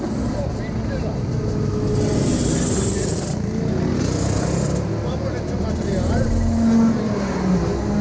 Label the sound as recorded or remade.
recorded